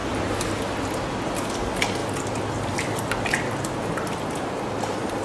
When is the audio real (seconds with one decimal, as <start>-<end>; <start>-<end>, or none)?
0.0-5.2